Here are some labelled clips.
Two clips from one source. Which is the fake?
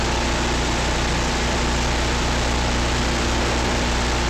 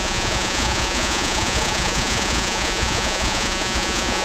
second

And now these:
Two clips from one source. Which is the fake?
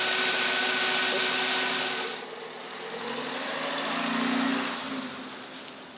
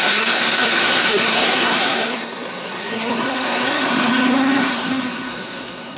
second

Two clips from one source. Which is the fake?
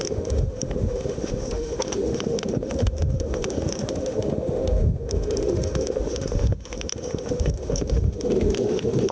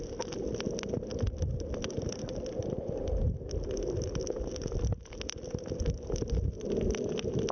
first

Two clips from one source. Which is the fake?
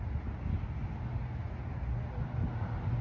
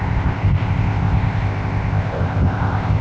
second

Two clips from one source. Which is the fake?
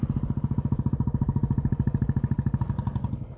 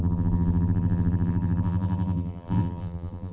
second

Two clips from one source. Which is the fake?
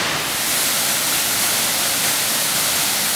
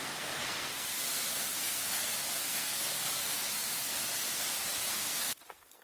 second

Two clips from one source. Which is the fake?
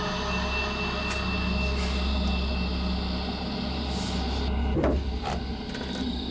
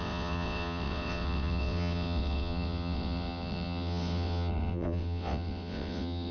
second